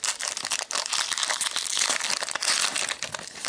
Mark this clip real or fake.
real